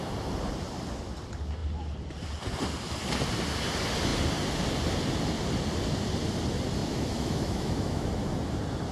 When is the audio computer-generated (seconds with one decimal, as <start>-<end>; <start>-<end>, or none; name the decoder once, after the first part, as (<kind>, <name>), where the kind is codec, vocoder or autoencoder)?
6.8-8.1 (autoencoder, DAC-VAE)

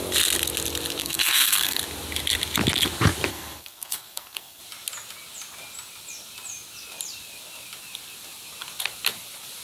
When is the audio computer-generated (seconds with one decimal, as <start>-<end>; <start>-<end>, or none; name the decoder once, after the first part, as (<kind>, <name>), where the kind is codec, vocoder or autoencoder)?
1.0-1.8 (codec, SNAC); 3.3-4.6

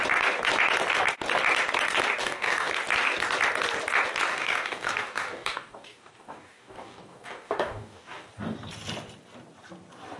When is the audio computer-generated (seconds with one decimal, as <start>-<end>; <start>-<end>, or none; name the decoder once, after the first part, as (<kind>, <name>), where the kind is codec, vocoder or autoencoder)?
2.2-2.7 (codec, DAC); 4.3-8.3

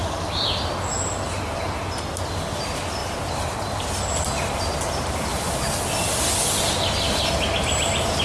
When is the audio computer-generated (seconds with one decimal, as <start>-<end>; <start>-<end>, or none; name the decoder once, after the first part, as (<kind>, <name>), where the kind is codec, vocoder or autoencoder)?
0.0-0.7 (vocoder, BigVGAN v2); 3.0-3.9; 5.3-6.3

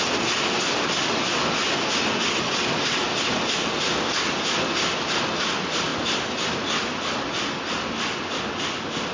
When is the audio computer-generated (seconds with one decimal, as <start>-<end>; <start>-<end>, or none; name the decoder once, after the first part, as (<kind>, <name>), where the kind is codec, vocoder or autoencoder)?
none

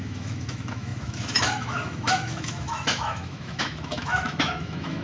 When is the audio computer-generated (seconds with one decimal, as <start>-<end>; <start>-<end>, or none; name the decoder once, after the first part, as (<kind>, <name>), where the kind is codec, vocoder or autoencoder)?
0.0-5.0 (autoencoder, DAC-VAE)